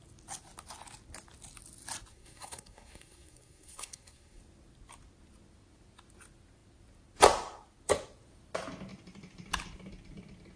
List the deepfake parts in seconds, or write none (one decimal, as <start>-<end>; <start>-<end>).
2.1-4.4